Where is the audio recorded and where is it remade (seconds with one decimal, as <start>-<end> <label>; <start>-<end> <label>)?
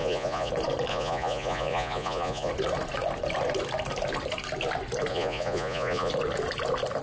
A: 0.0-0.5 remade; 0.5-0.9 recorded; 0.9-2.5 remade; 2.5-5.1 recorded; 5.1-6.1 remade; 6.1-7.0 recorded